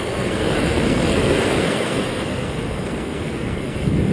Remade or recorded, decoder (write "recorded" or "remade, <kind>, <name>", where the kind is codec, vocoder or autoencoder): remade, codec, SNAC